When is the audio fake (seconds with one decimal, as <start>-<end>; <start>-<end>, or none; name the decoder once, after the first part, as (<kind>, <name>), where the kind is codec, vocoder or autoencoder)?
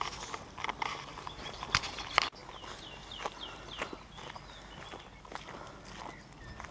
1.1-1.8 (vocoder, BigVGAN v2)